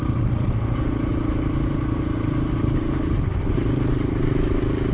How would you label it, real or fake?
real